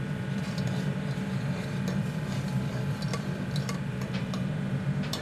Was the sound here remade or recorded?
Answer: remade